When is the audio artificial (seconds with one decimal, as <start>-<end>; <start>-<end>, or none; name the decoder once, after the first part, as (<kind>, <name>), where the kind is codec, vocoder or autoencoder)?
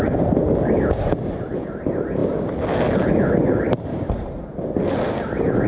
none